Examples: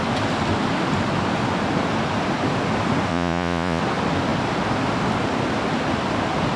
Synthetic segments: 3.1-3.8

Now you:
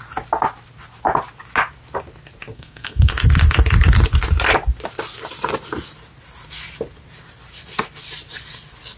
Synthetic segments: 2.5-3.1

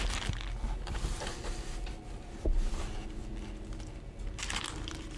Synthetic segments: 1.1-2.8

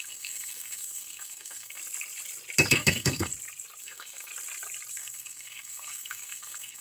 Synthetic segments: 0.0-1.8; 2.7-3.3; 3.8-4.3; 4.9-6.8

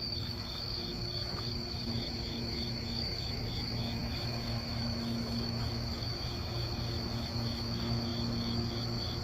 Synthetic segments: 0.0-9.2

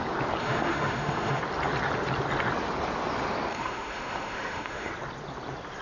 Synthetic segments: 0.4-1.4; 3.5-4.9